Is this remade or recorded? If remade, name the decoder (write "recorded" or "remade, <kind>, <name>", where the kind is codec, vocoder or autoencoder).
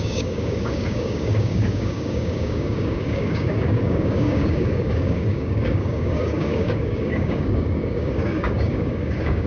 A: remade, codec, DAC